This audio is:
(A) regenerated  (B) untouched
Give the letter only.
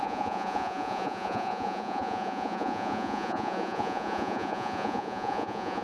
A